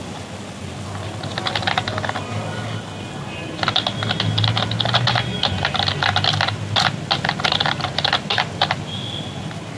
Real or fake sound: real